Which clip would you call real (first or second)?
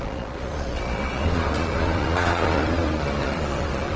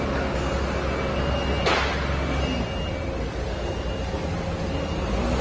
second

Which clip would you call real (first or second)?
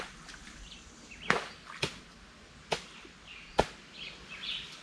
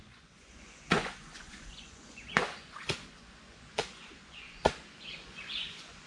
first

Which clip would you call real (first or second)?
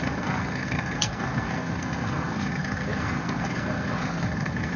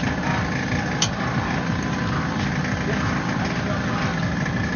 second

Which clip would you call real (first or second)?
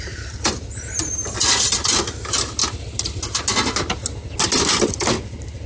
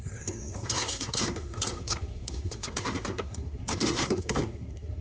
first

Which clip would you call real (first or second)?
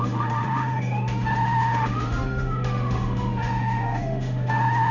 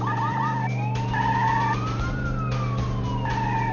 second